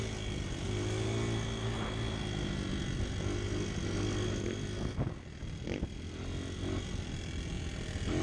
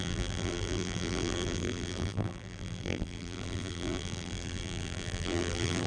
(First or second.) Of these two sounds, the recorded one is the first